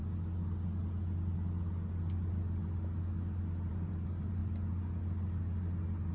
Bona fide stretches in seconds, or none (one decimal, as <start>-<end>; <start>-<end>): 0.0-3.7; 4.4-6.1